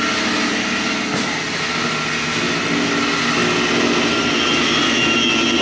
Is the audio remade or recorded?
recorded